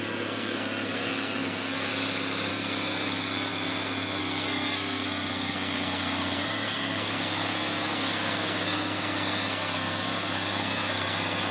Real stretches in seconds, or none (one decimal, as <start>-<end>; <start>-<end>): 1.9-2.5